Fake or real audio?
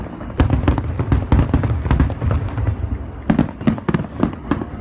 real